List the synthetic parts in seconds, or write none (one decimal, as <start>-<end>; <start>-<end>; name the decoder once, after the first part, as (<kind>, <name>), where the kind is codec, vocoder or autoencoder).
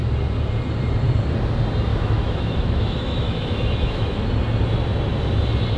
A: 1.9-4.2 (autoencoder, DAC-VAE)